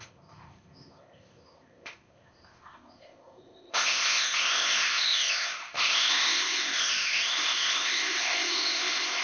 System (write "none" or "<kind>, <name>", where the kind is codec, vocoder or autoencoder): codec, ZipCodec